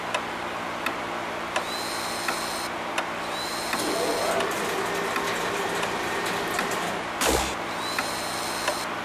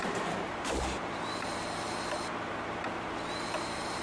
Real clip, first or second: first